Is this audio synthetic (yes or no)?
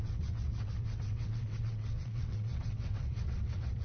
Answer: yes